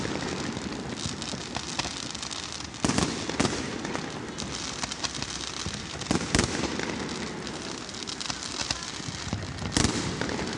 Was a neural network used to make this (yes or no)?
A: no